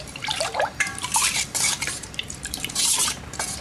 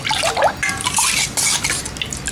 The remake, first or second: first